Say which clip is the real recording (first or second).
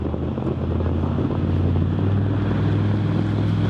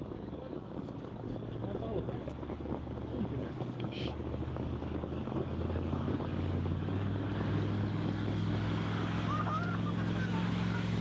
first